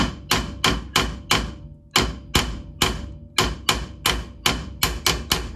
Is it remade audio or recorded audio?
recorded